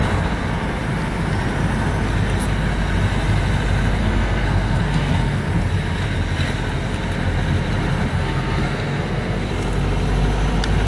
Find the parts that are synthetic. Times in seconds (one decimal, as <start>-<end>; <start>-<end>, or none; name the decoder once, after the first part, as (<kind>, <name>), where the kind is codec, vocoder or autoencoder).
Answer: 4.0-5.5 (codec, SNAC); 8.1-9.5